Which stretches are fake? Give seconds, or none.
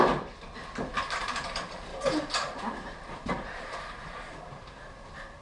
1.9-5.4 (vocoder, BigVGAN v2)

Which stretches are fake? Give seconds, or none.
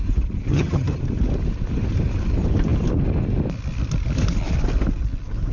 0.5-1.0 (vocoder, HiFi-GAN)